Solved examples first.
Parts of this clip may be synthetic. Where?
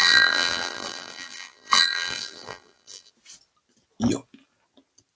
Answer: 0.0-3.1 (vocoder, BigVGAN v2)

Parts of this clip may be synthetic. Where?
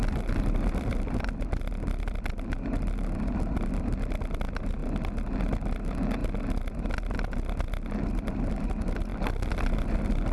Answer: none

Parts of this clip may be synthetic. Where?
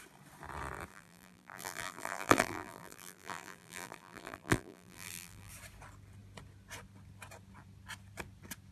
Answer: 0.9-5.5 (vocoder, BigVGAN v2)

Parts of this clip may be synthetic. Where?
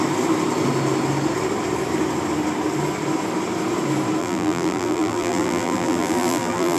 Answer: 4.2-6.8 (vocoder, BigVGAN v2)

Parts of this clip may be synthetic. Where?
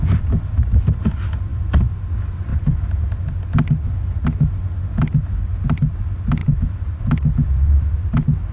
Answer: 2.5-3.3 (vocoder, BigVGAN v2); 6.4-7.0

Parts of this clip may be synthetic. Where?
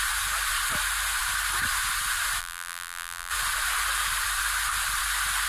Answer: 2.4-3.3 (vocoder, BigVGAN v2)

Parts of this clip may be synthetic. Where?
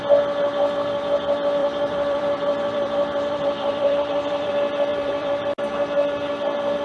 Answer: 1.6-4.5 (vocoder, BigVGAN v2); 4.9-5.4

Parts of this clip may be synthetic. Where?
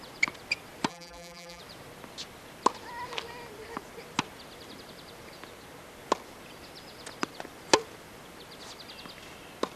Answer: 0.9-1.6 (vocoder, BigVGAN v2)